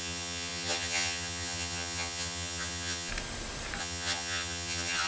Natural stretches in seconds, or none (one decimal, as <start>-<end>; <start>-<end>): 3.1-3.8